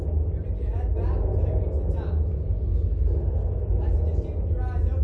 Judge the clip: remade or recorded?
recorded